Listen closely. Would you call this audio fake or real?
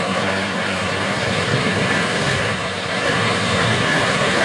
fake